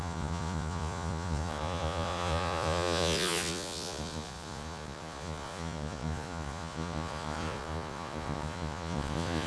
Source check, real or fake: fake